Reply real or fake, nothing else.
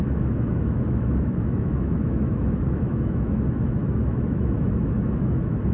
fake